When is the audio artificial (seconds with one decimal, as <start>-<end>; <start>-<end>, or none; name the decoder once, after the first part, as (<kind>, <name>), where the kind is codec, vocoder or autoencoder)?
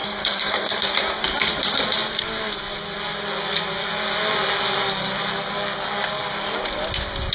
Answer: 0.0-0.8 (codec, SNAC)